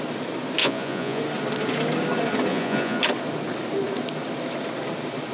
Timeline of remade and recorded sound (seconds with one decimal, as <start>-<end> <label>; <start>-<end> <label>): 0.0-0.6 recorded; 0.6-1.2 remade; 1.2-2.5 recorded; 2.5-3.0 remade; 3.0-5.3 recorded